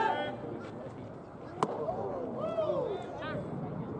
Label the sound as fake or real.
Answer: real